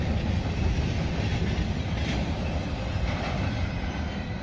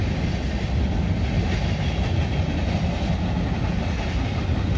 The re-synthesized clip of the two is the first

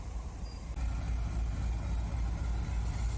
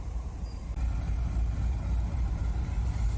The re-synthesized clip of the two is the second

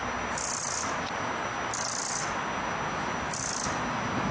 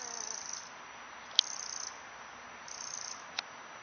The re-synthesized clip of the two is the second